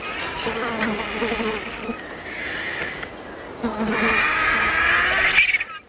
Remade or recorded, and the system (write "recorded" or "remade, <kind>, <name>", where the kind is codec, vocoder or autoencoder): recorded